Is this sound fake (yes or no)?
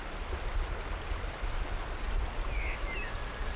no